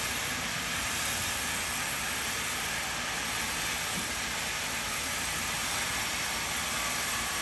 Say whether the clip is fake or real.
fake